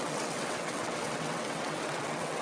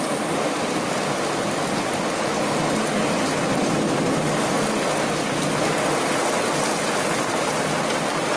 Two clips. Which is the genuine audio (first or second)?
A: second